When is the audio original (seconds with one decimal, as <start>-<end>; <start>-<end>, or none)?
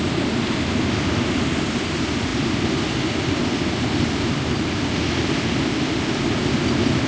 0.0-7.1